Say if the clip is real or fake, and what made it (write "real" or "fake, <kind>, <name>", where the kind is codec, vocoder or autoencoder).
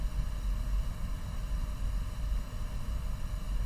real